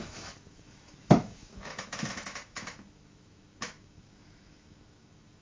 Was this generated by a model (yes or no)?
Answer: yes